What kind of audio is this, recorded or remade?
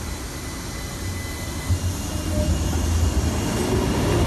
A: recorded